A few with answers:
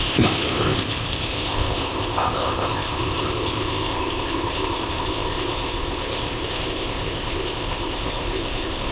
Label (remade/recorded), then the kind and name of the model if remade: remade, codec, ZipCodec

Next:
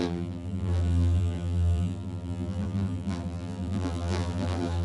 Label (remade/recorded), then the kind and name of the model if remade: remade, vocoder, BigVGAN v2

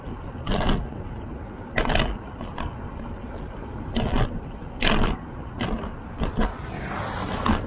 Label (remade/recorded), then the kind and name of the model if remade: recorded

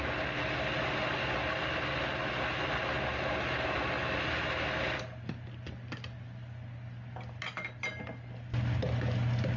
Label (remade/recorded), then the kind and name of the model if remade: recorded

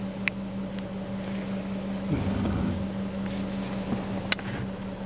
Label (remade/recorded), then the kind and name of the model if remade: recorded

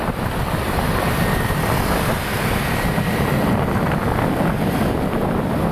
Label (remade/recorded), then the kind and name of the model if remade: recorded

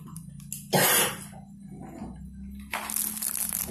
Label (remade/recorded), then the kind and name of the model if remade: recorded